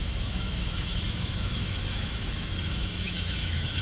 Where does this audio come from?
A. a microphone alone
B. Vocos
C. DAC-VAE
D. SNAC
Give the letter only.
C